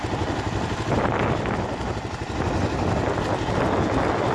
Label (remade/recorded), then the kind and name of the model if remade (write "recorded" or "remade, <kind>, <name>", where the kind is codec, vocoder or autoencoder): recorded